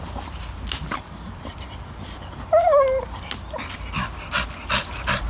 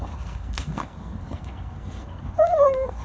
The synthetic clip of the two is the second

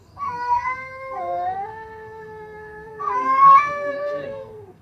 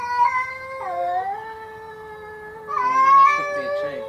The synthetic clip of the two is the first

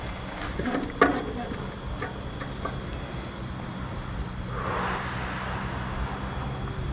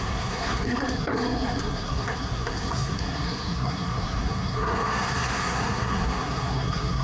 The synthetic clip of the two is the second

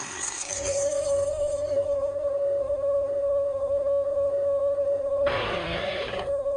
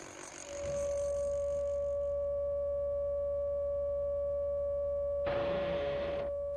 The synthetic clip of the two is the first